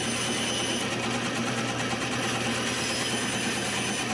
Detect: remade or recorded recorded